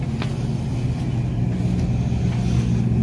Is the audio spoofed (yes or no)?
no